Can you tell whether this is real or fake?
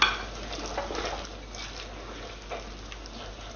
real